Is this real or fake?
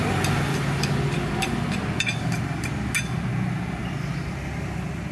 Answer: real